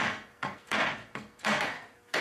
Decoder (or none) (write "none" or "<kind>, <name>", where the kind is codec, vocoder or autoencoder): codec, SNAC